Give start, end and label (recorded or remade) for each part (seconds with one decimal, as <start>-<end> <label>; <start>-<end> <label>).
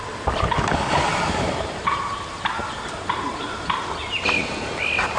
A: 0.0-1.1 recorded; 1.1-4.2 remade; 4.2-5.2 recorded